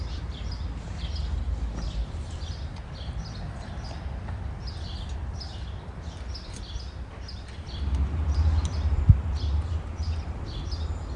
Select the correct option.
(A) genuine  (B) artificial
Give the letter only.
A